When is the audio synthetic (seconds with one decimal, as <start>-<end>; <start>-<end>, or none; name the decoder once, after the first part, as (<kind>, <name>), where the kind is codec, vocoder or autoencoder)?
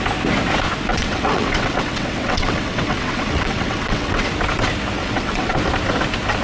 0.9-4.3 (vocoder, WaveNeXt); 5.0-5.6